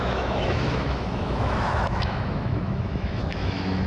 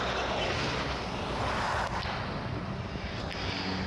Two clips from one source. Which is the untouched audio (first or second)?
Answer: second